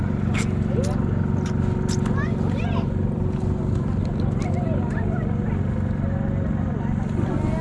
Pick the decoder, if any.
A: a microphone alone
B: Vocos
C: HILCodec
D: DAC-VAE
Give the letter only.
A